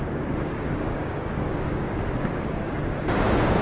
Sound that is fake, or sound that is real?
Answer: fake